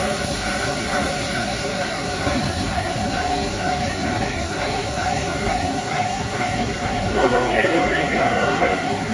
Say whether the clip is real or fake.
fake